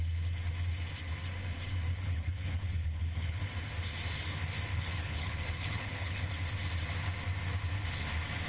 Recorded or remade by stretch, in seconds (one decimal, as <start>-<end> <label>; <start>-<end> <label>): 0.0-1.9 recorded; 1.9-3.4 remade; 3.4-4.7 recorded; 4.7-6.3 remade; 6.3-8.5 recorded